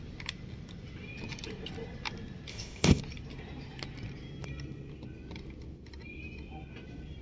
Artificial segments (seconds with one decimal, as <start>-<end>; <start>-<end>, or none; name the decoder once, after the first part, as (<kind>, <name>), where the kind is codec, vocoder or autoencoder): 2.5-3.0 (codec, ZipCodec)